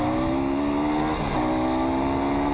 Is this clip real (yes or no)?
yes